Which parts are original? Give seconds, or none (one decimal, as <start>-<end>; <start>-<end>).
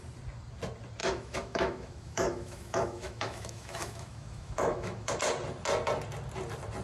0.0-1.0; 5.1-6.8